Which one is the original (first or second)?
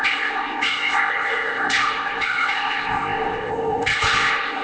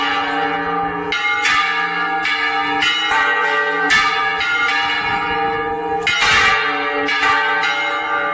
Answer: second